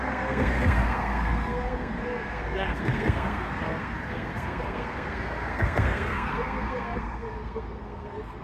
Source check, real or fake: fake